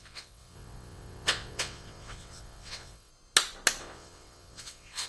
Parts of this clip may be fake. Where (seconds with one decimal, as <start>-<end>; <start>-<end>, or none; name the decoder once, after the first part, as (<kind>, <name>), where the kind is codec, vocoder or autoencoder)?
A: 0.0-3.1 (vocoder, WaveNeXt); 3.8-5.1